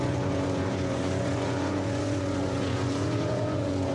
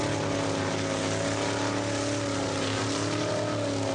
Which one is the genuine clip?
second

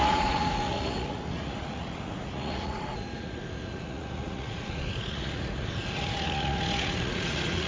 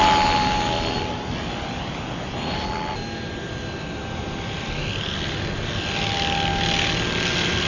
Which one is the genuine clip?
second